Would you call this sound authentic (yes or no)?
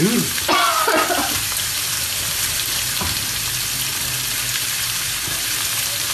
yes